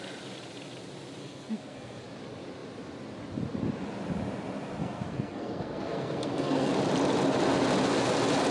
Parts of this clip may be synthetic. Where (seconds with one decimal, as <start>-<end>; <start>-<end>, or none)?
1.2-2.0; 4.8-6.7